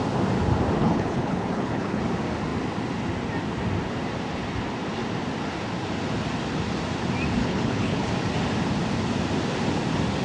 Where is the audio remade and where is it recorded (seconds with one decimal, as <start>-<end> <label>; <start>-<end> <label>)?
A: 0.0-0.8 recorded; 0.8-2.0 remade; 2.0-7.4 recorded; 7.4-8.1 remade; 8.1-10.2 recorded